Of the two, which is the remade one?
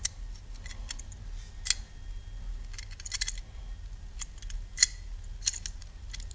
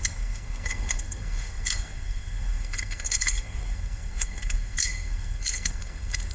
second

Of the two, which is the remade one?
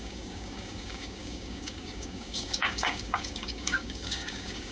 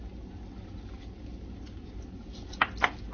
first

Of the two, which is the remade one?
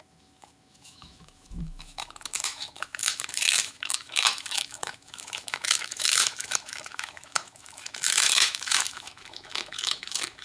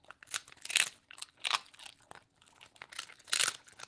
first